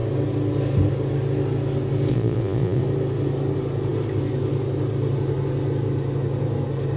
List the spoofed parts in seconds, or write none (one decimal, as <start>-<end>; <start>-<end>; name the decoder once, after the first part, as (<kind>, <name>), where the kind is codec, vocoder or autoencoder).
2.1-2.8 (vocoder, Vocos)

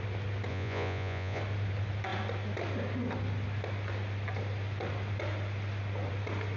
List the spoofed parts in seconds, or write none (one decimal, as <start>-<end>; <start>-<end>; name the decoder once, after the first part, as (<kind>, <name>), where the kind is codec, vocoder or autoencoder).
0.5-1.4 (vocoder, Vocos)

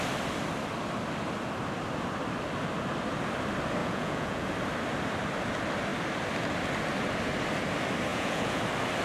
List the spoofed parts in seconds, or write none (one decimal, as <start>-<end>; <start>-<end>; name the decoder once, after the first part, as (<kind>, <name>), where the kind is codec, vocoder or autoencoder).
3.8-4.5 (vocoder, Vocos); 8.1-8.6

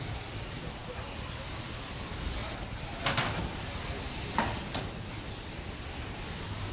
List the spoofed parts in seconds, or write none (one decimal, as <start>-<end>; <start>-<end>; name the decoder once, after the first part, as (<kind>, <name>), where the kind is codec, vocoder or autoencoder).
none